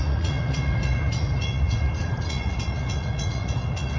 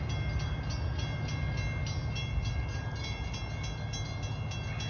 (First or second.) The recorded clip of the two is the second